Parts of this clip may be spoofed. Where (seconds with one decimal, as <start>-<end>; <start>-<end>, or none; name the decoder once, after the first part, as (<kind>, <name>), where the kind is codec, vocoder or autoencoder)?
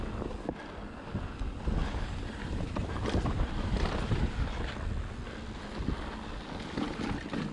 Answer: 1.8-4.3 (vocoder, BigVGAN v2)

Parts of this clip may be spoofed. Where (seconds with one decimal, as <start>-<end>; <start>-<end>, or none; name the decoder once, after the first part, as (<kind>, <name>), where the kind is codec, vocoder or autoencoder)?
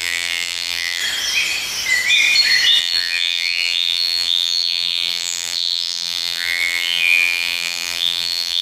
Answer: 0.0-1.0 (vocoder, BigVGAN v2); 2.8-8.6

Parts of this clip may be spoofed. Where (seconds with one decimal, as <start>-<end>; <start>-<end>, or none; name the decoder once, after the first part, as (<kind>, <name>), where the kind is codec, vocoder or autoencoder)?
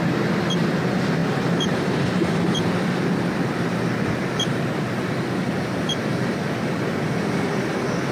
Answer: 1.2-2.4 (vocoder, BigVGAN v2)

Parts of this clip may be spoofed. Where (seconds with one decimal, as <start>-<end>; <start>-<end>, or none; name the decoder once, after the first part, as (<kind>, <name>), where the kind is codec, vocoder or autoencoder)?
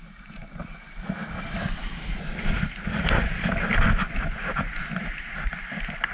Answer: none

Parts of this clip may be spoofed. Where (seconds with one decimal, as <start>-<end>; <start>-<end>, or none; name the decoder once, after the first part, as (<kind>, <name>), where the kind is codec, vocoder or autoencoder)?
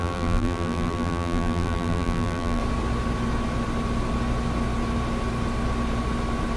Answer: 0.0-2.6 (vocoder, BigVGAN v2)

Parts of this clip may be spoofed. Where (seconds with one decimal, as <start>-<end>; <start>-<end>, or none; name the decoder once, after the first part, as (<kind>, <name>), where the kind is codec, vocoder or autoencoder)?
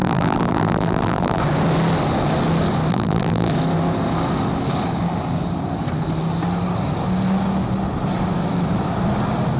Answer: 0.0-1.4 (vocoder, BigVGAN v2); 2.9-3.5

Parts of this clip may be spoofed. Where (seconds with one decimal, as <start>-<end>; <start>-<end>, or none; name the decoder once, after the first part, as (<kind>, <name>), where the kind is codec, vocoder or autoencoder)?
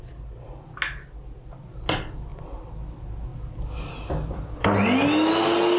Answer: none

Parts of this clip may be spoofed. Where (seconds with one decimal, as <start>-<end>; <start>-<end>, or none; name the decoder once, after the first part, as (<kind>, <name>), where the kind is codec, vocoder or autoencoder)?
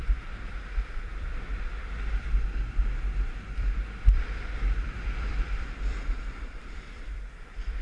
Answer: 0.0-7.8 (vocoder, BigVGAN v2)